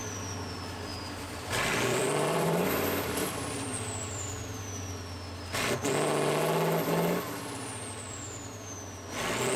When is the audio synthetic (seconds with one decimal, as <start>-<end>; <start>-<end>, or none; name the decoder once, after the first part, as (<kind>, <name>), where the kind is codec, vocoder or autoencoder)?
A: 0.9-4.4 (vocoder, BigVGAN v2)